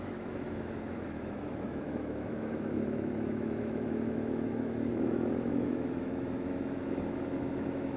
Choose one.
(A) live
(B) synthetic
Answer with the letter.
B